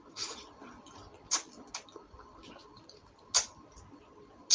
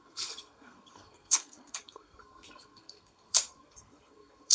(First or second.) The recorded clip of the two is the first